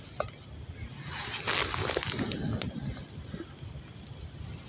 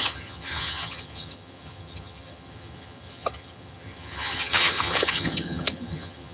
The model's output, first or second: second